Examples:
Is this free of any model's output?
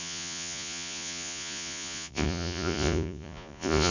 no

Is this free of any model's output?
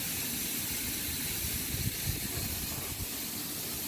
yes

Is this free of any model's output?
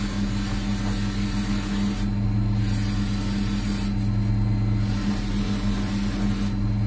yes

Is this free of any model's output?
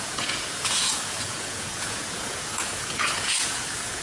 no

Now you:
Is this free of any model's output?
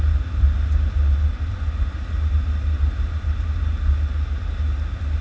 yes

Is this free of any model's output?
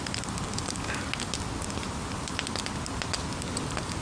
yes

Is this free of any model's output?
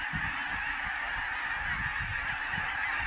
yes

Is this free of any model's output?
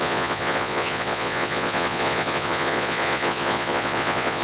no